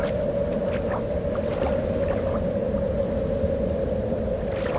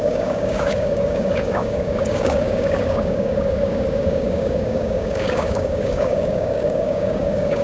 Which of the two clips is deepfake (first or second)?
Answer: second